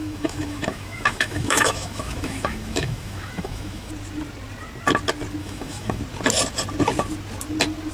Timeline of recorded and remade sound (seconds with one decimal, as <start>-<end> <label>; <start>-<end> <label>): 0.0-3.9 remade; 3.9-5.4 recorded; 5.4-6.0 remade; 6.0-7.9 recorded

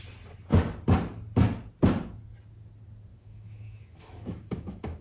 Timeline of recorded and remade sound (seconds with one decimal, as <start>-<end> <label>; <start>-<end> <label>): 0.0-3.1 recorded; 3.1-5.0 remade